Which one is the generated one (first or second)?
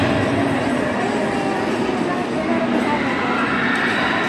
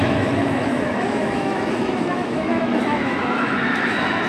second